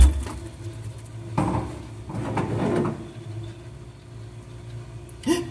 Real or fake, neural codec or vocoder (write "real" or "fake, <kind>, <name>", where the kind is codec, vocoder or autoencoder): real